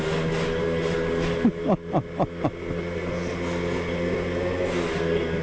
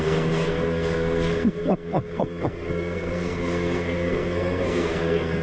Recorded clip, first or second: first